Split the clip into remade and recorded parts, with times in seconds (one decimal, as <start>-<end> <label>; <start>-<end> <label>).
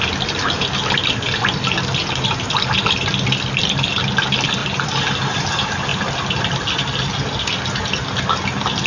0.0-4.6 recorded; 4.6-5.4 remade; 5.4-8.9 recorded